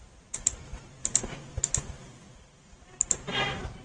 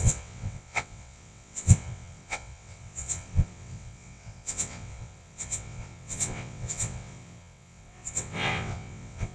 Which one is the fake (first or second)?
second